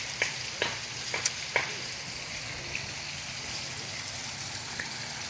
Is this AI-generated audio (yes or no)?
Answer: no